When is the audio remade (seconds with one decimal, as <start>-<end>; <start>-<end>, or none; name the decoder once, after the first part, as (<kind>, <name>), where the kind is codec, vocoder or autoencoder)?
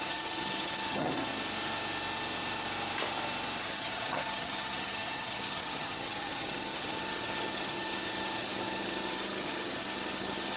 0.0-1.3 (vocoder, HiFi-GAN); 3.6-10.6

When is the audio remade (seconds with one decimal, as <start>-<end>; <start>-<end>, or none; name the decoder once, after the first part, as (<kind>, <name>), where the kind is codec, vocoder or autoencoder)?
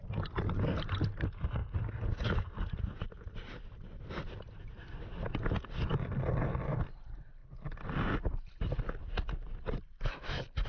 none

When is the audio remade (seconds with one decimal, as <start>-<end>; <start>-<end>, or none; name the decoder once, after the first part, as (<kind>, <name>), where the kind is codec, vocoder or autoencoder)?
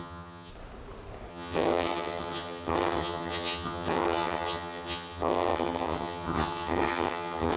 0.0-0.5 (vocoder, HiFi-GAN); 1.3-7.6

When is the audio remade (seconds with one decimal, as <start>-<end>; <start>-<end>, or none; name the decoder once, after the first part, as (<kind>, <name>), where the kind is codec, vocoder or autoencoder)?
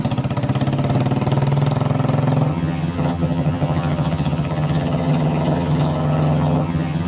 2.5-7.1 (vocoder, HiFi-GAN)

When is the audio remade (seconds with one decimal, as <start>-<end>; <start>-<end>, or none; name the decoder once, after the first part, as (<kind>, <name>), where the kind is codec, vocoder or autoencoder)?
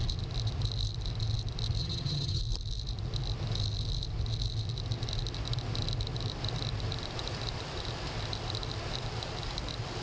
1.8-2.4 (vocoder, HiFi-GAN)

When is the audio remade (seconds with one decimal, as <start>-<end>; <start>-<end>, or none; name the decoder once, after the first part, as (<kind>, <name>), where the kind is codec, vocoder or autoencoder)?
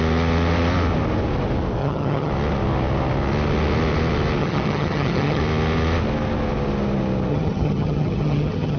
1.8-2.3 (vocoder, HiFi-GAN); 4.4-5.4; 7.3-8.8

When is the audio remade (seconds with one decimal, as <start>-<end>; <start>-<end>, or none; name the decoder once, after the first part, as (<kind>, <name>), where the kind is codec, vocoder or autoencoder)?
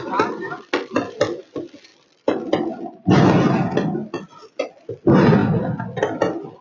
none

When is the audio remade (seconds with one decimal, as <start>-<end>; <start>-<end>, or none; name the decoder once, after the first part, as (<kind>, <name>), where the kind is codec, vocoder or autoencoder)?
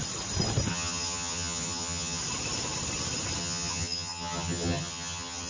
0.7-2.2 (vocoder, HiFi-GAN); 3.4-5.5